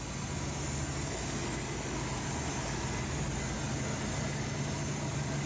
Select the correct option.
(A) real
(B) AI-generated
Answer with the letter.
A